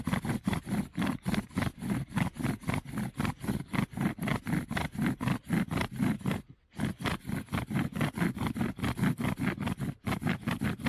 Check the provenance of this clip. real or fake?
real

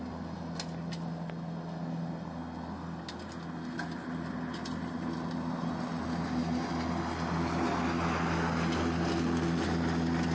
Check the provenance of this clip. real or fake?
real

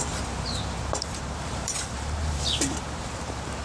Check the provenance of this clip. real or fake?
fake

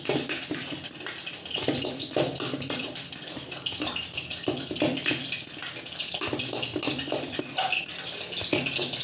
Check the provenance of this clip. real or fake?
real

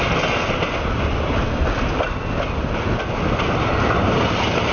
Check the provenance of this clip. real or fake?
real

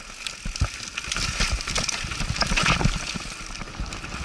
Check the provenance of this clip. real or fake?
real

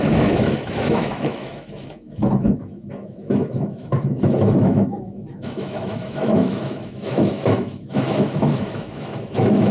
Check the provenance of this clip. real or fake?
fake